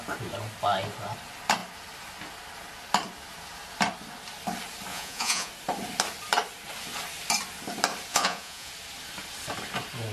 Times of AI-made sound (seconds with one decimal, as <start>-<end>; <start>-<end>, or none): 4.9-5.5; 8.1-8.7